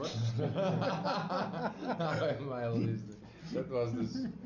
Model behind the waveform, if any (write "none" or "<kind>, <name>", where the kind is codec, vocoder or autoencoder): none